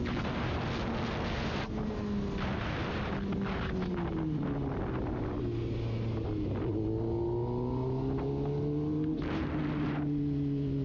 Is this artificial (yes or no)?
no